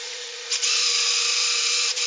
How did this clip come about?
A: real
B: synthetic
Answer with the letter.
B